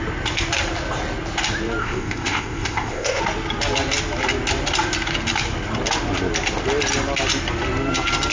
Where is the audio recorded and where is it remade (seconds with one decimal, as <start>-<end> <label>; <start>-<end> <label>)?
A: 0.0-1.8 recorded; 1.8-3.2 remade; 3.2-8.3 recorded